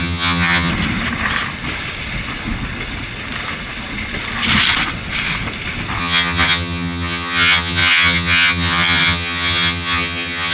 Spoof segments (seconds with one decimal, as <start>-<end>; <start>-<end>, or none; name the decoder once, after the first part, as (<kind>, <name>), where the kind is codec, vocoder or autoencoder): 0.0-0.7 (vocoder, HiFi-GAN); 6.0-10.5